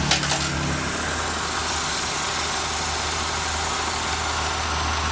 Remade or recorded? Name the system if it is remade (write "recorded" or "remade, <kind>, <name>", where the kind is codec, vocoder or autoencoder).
recorded